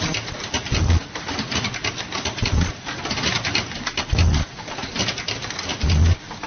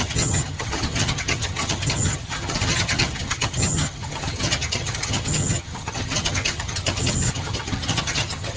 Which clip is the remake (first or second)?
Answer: second